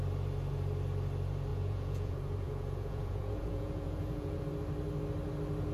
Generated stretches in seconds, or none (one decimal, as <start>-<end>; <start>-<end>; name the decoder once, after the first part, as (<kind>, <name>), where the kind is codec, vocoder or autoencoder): 1.5-4.4 (vocoder, Vocos)